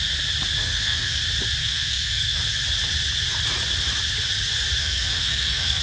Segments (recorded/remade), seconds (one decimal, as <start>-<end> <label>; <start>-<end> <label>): 0.0-0.6 recorded; 0.6-1.2 remade; 1.2-1.6 recorded; 1.6-2.4 remade; 2.4-4.8 recorded; 4.8-5.8 remade